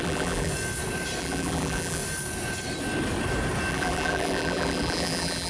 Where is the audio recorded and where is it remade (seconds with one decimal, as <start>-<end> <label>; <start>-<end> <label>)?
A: 0.0-0.5 remade; 0.5-1.2 recorded; 1.2-2.0 remade; 2.0-3.7 recorded; 3.7-5.5 remade